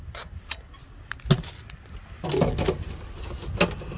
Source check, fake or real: real